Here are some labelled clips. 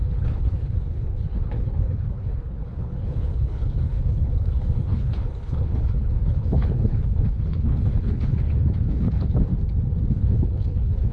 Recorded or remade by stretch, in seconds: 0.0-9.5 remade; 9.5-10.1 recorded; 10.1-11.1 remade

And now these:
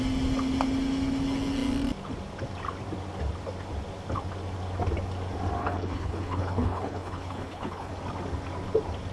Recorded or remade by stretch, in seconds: 0.0-5.6 recorded; 5.6-7.9 remade; 7.9-9.1 recorded